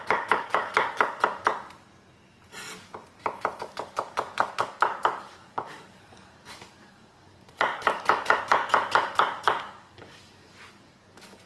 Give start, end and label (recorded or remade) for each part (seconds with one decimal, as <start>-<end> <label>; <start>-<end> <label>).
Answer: 0.0-1.5 remade; 1.5-3.6 recorded; 3.6-11.5 remade

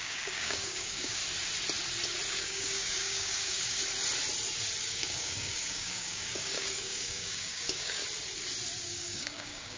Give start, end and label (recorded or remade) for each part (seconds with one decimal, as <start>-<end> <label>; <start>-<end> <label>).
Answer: 0.0-1.2 remade; 1.2-2.3 recorded; 2.3-3.8 remade; 3.8-4.8 recorded; 4.8-8.0 remade; 8.0-8.8 recorded; 8.8-9.8 remade